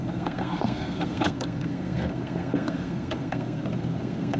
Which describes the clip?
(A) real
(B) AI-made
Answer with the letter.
B